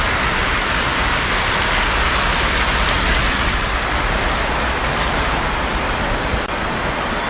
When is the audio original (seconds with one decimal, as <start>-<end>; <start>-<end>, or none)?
0.0-0.9; 1.5-7.3

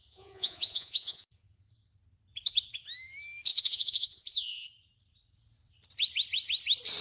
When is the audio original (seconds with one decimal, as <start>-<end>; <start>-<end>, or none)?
1.7-3.5; 4.7-7.0

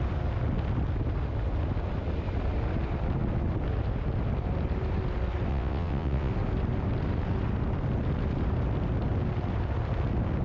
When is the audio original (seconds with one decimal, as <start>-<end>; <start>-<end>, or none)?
0.0-5.5; 6.3-10.4

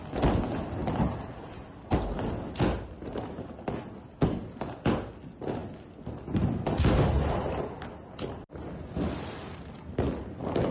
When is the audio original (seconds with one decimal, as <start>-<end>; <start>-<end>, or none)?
0.0-0.8; 1.7-10.7

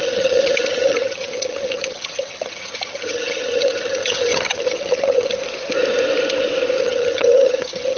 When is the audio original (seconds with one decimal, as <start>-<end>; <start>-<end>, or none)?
5.4-6.8

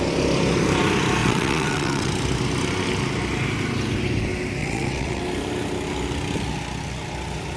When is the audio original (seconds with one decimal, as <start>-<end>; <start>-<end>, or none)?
0.0-1.2; 2.1-4.6; 5.2-7.6